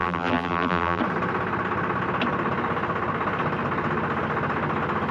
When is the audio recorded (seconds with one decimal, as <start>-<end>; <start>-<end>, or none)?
1.0-5.1